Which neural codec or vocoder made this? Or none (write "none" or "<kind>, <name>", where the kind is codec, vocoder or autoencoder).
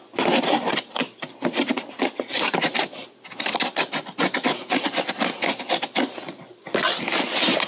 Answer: none